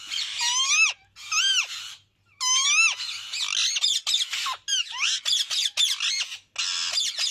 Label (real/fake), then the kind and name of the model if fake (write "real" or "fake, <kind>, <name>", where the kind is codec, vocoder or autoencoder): real